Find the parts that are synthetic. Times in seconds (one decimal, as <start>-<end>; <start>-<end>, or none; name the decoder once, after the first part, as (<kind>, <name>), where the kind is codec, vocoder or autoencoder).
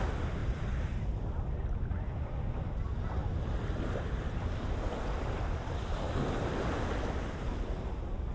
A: 0.4-1.1 (vocoder, BigVGAN v2)